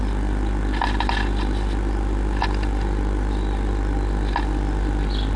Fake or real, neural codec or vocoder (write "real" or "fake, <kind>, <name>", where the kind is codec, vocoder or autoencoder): real